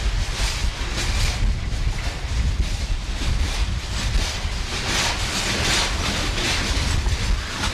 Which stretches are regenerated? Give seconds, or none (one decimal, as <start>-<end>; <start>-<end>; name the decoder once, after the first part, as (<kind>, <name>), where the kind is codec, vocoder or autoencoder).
none